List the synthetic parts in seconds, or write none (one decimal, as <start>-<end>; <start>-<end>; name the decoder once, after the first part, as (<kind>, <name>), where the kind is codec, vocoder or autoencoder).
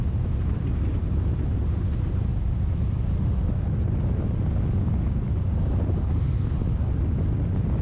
none